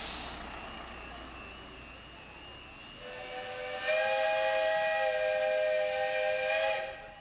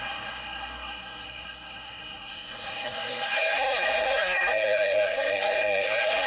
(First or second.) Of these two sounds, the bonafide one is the first